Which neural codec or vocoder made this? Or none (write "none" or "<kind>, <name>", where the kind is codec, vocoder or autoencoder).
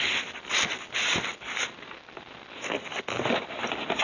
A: none